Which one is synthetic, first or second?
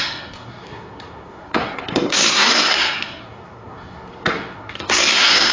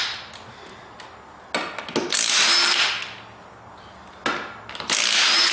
first